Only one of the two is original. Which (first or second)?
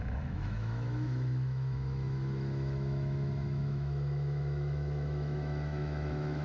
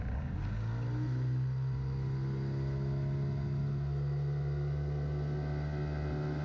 second